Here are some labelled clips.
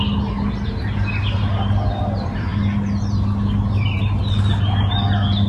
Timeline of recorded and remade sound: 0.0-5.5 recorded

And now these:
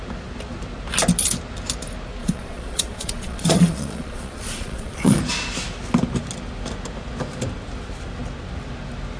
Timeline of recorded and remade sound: 0.0-2.2 recorded; 2.2-5.2 remade; 5.2-9.2 recorded

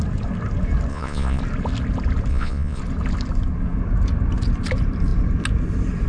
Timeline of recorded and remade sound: 0.0-0.9 recorded; 0.9-1.4 remade; 1.4-2.3 recorded; 2.3-2.8 remade; 2.8-6.1 recorded